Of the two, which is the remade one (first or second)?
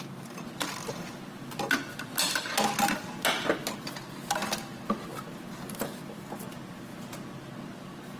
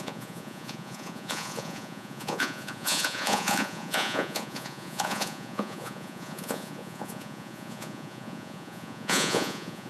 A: second